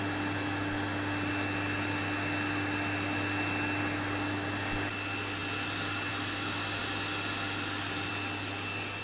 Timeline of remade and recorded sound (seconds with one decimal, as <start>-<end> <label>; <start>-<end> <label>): 0.0-9.0 recorded